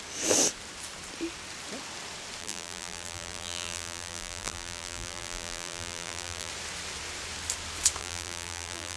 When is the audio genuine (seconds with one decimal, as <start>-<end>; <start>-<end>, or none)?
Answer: 0.0-2.4; 6.5-8.0